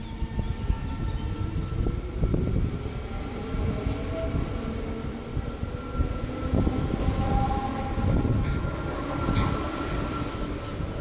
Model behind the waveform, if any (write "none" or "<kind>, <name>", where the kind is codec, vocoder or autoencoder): none